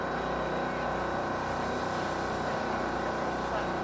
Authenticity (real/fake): real